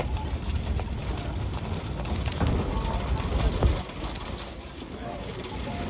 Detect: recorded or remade recorded